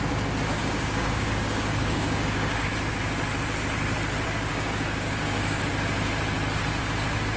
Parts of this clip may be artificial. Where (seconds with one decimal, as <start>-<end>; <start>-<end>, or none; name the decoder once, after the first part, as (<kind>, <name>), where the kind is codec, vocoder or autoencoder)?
0.6-2.7 (codec, DAC); 4.5-5.7